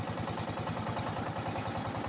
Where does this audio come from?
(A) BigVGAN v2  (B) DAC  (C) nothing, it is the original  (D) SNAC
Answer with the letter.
C